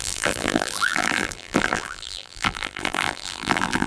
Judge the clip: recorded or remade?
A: remade